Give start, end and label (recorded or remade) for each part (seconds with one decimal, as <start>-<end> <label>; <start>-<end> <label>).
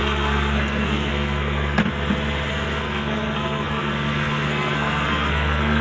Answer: 0.0-1.8 remade; 1.8-2.5 recorded; 2.5-5.8 remade